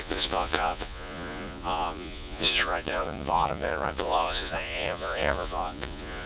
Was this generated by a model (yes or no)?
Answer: yes